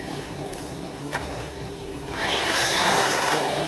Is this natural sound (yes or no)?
no